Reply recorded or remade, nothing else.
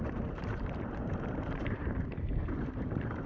remade